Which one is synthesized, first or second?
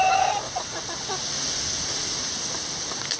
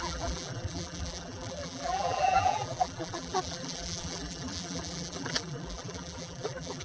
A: second